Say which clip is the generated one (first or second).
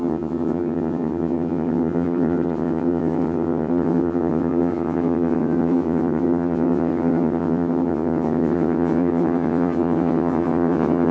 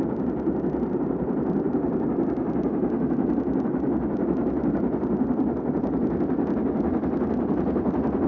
first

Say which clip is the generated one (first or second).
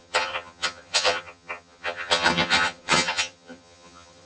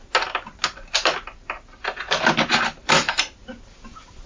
first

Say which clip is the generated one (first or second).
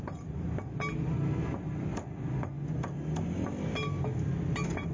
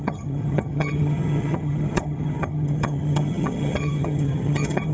second